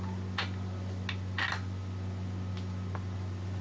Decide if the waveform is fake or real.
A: real